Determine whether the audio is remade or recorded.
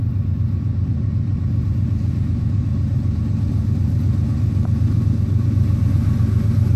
remade